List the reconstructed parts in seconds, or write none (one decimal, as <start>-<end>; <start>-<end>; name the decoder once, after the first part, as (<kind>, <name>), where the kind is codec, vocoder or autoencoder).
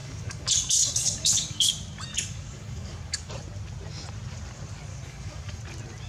0.0-1.7 (codec, DAC); 2.1-3.3; 4.9-5.6